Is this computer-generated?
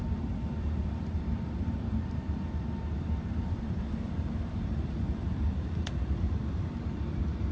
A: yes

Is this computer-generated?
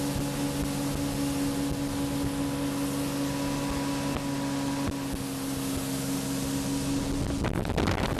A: no